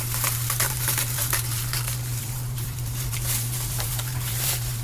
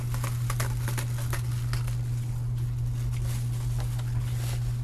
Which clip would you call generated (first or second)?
first